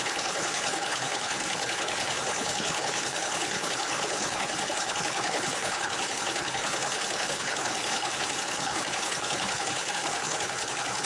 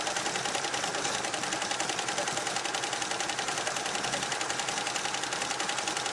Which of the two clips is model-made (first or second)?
first